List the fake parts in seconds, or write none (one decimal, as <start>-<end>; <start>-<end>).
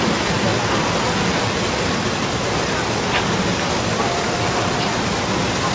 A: none